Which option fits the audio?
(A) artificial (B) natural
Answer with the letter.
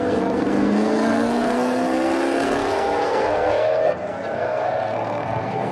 A